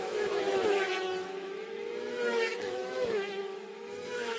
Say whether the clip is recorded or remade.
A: remade